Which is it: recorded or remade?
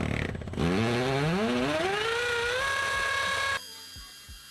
recorded